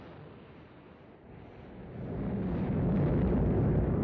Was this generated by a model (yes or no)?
no